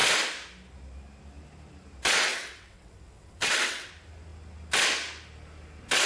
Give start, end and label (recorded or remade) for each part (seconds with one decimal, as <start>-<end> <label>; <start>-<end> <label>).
0.0-2.3 recorded; 2.3-3.9 remade; 3.9-6.1 recorded